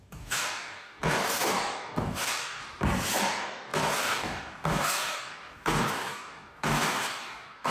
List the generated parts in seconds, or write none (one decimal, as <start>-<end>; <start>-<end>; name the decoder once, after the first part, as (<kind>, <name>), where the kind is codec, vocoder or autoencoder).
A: 0.0-2.6 (codec, DAC); 3.2-7.7